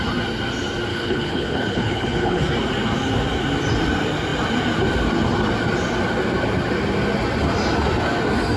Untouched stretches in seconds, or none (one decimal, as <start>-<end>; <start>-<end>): 0.0-0.9; 2.4-8.6